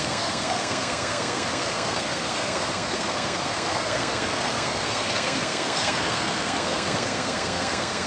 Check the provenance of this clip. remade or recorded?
remade